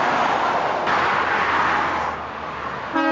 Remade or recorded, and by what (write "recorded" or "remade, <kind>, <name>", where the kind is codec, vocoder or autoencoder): recorded